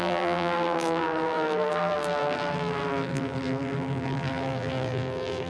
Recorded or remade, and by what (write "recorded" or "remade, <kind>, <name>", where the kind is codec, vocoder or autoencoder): remade, vocoder, BigVGAN v2